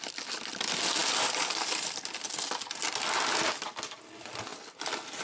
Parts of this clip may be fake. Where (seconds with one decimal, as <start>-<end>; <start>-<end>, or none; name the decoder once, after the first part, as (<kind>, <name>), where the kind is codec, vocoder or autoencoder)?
none